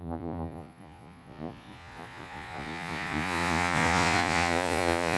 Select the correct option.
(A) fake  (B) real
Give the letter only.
A